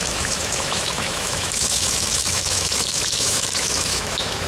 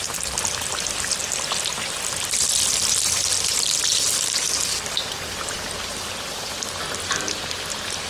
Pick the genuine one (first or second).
second